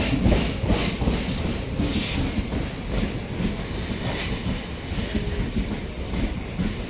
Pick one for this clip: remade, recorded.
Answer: recorded